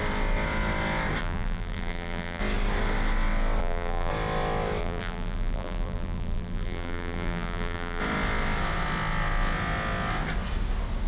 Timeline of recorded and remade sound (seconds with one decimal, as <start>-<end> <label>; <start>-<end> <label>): 0.0-1.2 recorded; 1.2-2.4 remade; 2.4-3.6 recorded; 3.6-4.1 remade; 4.1-4.8 recorded; 4.8-8.0 remade; 8.0-11.1 recorded